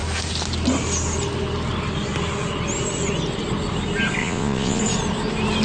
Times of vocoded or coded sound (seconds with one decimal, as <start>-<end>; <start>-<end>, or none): 4.2-4.8